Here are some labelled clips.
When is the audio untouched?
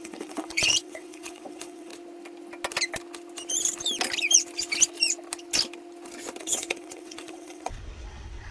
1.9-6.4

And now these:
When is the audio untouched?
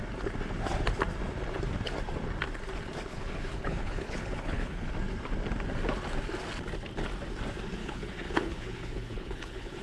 0.0-3.1; 4.9-7.8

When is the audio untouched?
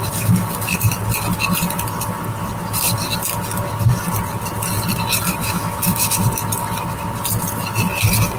0.0-5.4; 6.2-8.4